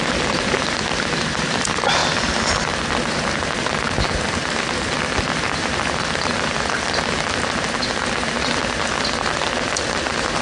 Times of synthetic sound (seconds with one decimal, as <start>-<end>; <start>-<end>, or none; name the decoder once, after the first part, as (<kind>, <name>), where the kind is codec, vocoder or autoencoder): none